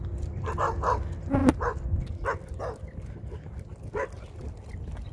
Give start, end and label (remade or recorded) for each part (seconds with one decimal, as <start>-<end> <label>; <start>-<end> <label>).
0.0-5.1 recorded